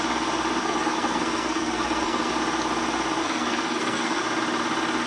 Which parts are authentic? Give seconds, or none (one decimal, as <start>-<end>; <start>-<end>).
0.0-0.6; 2.3-3.2; 4.2-5.1